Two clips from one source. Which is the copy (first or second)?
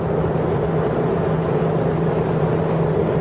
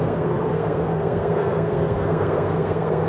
second